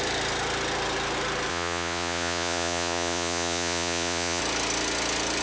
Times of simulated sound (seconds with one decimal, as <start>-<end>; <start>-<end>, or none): 1.5-4.4